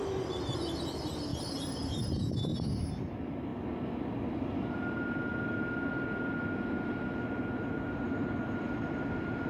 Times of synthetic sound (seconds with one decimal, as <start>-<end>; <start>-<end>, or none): none